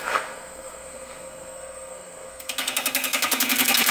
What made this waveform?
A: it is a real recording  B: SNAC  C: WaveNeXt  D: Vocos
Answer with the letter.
B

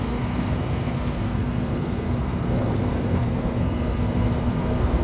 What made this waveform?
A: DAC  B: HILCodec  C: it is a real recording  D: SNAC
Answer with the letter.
D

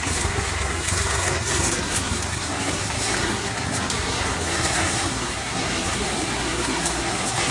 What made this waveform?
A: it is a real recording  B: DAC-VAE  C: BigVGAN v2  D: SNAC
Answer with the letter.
D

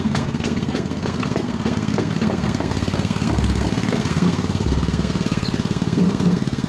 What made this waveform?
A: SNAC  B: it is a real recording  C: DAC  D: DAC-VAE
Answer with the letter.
A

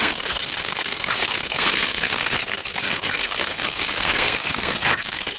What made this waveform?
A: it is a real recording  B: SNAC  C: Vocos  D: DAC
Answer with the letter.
B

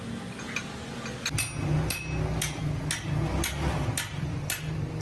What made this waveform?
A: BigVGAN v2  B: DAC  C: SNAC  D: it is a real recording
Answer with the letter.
D